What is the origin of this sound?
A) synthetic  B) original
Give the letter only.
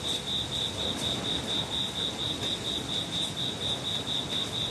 B